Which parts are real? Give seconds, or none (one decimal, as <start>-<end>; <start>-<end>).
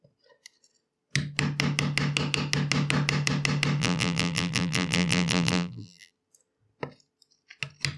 0.0-3.8; 6.1-8.0